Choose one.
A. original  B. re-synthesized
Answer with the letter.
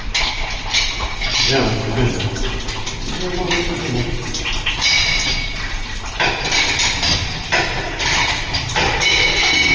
A